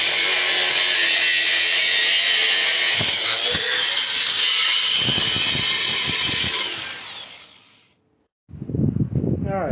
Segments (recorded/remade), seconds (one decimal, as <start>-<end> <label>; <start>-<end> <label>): 0.0-9.7 recorded